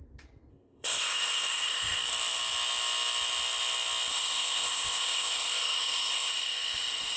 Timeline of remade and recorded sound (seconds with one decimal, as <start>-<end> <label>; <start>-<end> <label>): 0.0-0.5 recorded; 0.5-2.0 remade; 2.0-4.1 recorded; 4.1-7.2 remade